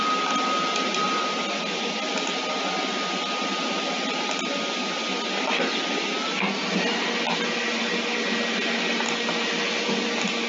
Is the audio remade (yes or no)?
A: no